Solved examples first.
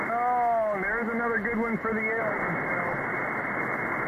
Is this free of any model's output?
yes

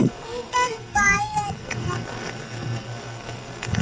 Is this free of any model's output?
no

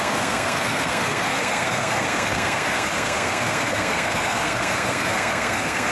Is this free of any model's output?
no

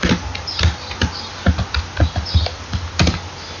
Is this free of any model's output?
yes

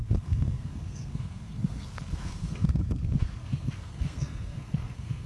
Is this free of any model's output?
no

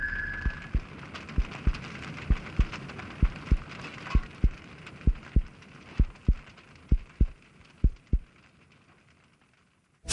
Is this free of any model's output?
yes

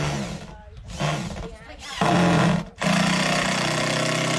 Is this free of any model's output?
yes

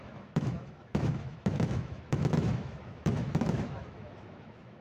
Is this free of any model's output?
no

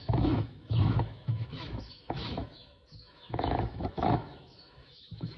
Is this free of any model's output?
no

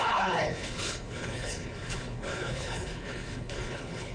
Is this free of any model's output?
no